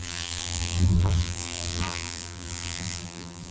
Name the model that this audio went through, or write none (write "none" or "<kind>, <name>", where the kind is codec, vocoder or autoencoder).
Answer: vocoder, BigVGAN v2